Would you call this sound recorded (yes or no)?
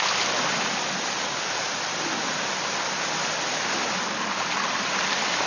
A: yes